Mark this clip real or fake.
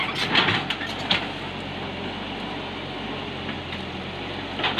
real